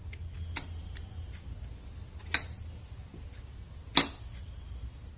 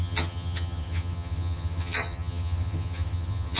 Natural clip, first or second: first